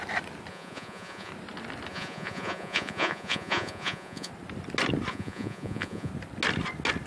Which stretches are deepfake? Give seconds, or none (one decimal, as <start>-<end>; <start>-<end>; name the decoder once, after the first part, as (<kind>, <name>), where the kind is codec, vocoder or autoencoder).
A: 0.5-1.3 (vocoder, Vocos); 1.9-4.3; 5.1-6.1